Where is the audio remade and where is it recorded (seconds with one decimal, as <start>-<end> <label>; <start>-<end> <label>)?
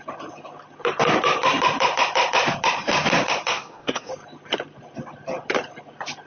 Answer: 0.0-3.5 recorded; 3.5-4.1 remade; 4.1-6.3 recorded